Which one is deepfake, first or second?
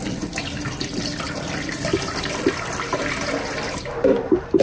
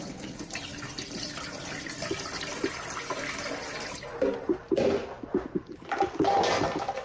first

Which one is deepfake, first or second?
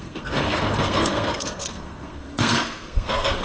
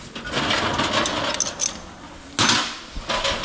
first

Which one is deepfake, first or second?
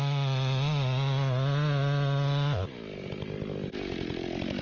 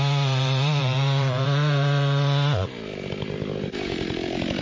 second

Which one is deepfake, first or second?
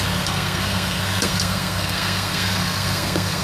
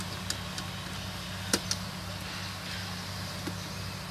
first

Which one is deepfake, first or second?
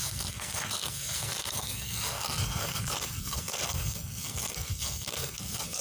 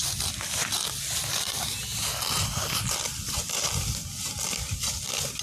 first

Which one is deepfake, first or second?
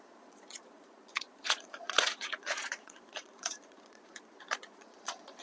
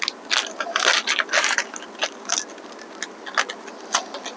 first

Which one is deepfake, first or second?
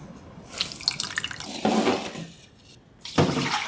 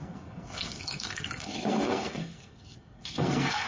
second